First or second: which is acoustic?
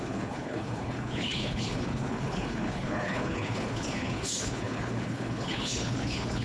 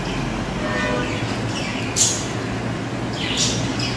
second